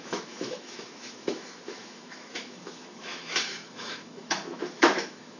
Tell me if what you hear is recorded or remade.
remade